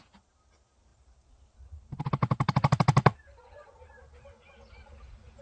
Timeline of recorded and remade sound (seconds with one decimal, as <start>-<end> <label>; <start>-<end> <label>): 0.0-0.9 recorded; 0.9-4.1 remade; 4.1-5.4 recorded

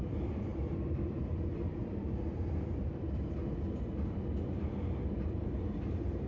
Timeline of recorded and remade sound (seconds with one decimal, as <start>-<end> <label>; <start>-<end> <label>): 0.0-6.3 remade

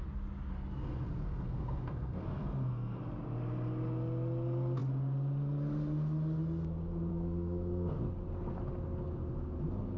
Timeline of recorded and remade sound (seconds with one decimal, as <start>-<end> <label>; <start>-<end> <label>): 0.0-1.2 recorded; 1.2-3.0 remade; 3.0-7.1 recorded; 7.1-8.0 remade; 8.0-10.0 recorded